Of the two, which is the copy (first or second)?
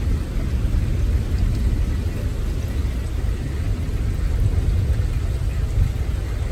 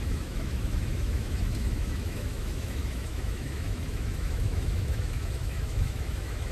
second